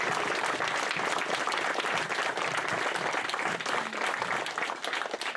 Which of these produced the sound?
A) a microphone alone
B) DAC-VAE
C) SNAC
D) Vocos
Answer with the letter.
A